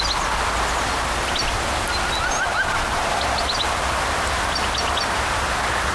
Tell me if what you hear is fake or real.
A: real